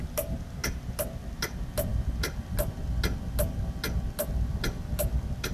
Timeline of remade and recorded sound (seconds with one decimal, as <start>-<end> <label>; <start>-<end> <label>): 0.0-5.5 recorded